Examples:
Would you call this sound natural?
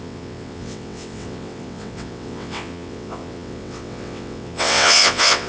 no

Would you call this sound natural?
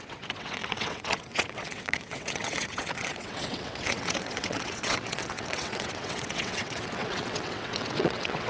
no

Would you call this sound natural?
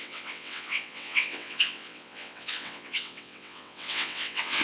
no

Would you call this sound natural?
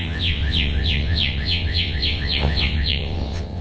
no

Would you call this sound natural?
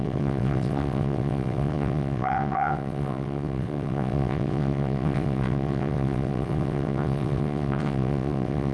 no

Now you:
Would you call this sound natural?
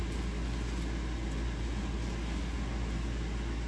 yes